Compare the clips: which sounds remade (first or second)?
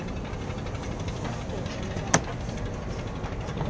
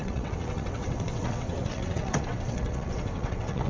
second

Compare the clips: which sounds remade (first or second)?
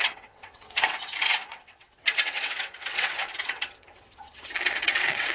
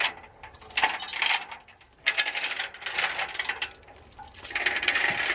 first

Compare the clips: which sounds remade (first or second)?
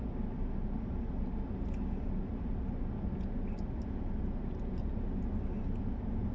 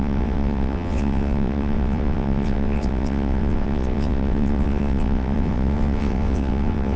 second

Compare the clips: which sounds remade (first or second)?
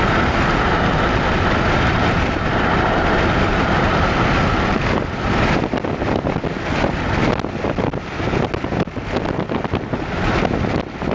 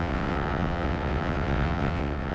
second